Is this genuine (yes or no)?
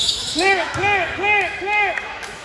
no